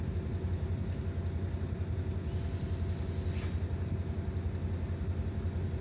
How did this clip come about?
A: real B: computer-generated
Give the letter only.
A